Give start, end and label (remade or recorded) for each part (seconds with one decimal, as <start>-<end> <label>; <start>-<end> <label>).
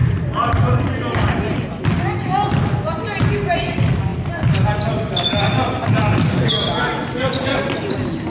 0.0-8.3 recorded